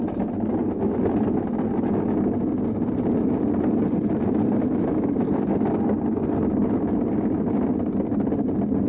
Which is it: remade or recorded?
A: recorded